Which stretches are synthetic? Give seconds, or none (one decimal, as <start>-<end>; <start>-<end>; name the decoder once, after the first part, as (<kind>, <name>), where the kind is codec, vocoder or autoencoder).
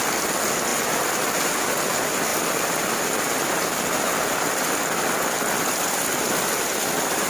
none